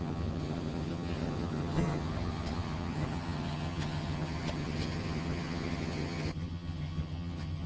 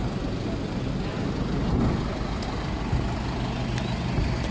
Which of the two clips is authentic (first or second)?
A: second